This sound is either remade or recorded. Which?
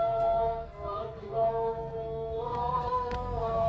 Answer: remade